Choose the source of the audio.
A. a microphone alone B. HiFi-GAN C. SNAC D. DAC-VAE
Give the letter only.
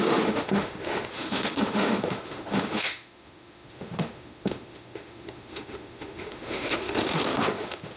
D